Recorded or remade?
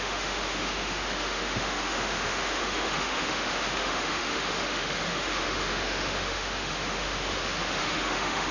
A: remade